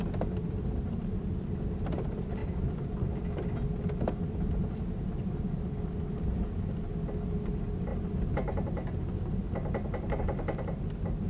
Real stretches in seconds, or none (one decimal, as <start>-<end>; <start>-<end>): 0.0-11.3